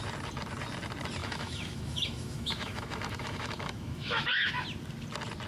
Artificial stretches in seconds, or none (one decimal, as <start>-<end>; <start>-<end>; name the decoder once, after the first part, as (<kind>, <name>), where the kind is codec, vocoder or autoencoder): 1.2-4.5 (autoencoder, DAC-VAE)